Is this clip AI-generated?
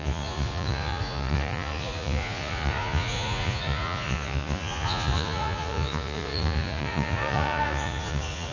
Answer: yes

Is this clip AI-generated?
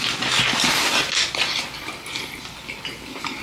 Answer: no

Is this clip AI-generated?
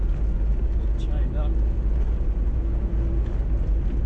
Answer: no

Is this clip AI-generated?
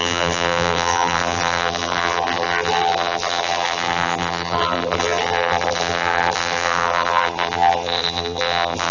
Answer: yes